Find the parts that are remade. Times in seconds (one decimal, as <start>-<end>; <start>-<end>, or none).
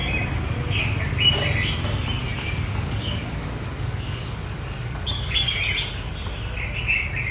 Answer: 2.2-5.5